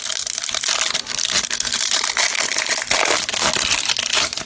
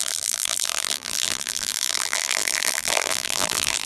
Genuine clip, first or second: first